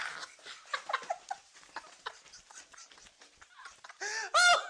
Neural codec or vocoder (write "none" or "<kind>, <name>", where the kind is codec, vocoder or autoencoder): none